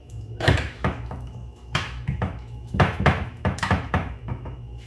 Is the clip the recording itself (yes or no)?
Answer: no